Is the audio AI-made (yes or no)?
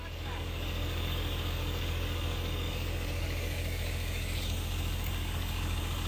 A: yes